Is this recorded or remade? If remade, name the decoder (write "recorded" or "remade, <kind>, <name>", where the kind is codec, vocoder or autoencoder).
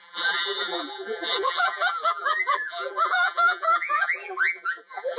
remade, vocoder, BigVGAN v2